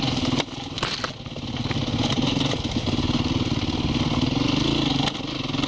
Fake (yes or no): no